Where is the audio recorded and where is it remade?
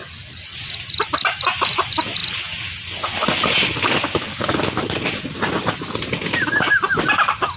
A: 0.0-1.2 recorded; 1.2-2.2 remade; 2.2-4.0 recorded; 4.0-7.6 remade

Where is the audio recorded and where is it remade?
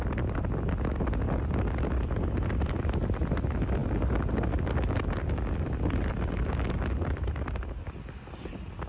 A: 0.0-8.9 recorded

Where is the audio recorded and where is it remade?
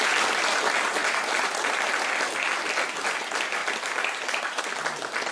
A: 0.0-5.3 recorded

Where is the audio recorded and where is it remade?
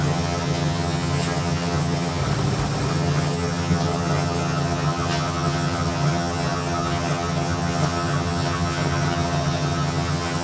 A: 0.0-2.2 remade; 2.2-2.9 recorded; 2.9-10.4 remade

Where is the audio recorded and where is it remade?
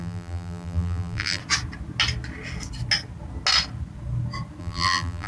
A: 0.0-1.4 remade; 1.4-4.6 recorded; 4.6-5.3 remade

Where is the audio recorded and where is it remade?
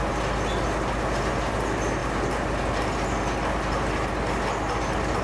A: 0.0-5.2 recorded